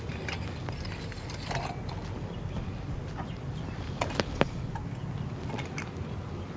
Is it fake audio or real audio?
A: real